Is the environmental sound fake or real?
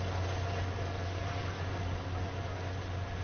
real